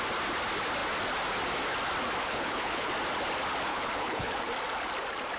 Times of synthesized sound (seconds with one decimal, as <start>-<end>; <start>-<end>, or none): 2.2-2.9; 3.7-4.5